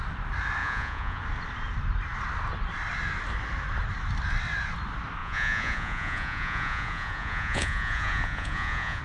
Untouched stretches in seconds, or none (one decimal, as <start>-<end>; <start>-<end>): 0.0-0.6; 1.2-5.2